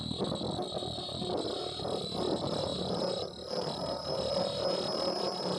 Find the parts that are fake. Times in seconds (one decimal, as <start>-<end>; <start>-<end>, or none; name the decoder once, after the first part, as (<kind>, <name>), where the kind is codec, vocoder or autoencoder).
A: none